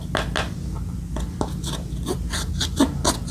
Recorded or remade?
recorded